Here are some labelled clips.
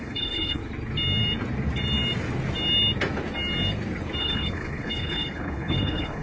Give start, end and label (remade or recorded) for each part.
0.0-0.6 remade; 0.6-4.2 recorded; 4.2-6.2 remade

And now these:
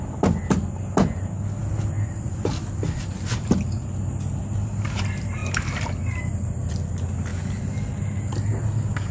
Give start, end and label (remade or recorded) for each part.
0.0-1.6 recorded; 1.6-3.0 remade; 3.0-9.1 recorded

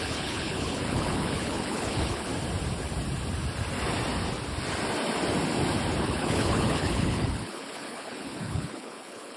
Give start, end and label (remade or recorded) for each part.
0.0-2.3 remade; 2.3-6.0 recorded; 6.0-9.4 remade

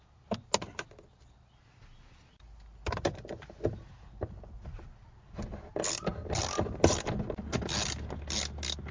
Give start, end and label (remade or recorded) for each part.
0.0-8.9 recorded

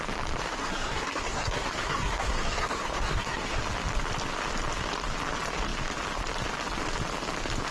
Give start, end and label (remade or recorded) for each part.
0.0-0.6 recorded; 0.6-3.6 remade; 3.6-7.7 recorded

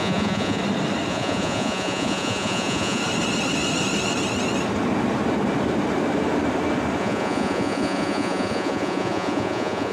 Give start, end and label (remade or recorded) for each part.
0.0-0.6 remade; 0.6-1.1 recorded; 1.1-3.0 remade; 3.0-7.0 recorded; 7.0-9.9 remade

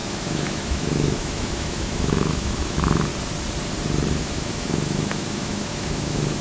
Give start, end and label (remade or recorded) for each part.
0.0-3.1 remade; 3.1-4.2 recorded; 4.2-6.4 remade